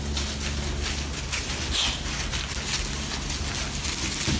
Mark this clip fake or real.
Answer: real